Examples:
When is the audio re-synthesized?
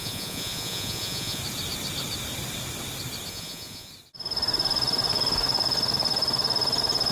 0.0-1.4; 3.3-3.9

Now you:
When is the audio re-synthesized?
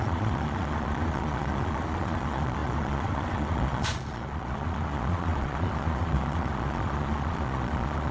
0.0-8.1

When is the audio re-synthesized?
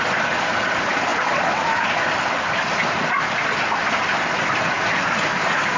none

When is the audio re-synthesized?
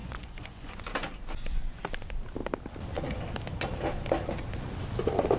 0.0-0.9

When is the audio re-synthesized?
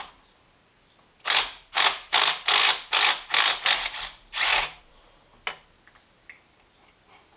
4.5-5.0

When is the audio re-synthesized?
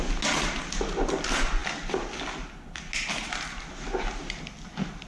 none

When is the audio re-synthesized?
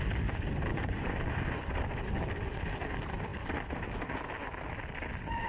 0.7-1.2